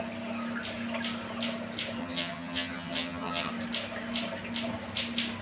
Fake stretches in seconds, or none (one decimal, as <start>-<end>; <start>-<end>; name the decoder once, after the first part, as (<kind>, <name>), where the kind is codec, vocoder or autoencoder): 2.0-3.5 (vocoder, HiFi-GAN)